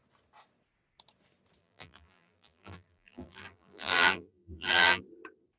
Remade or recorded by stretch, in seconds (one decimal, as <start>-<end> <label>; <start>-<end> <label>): 0.0-1.6 recorded; 1.6-5.0 remade; 5.0-5.6 recorded